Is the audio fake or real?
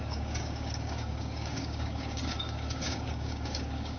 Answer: fake